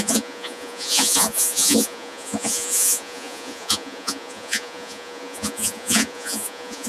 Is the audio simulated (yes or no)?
yes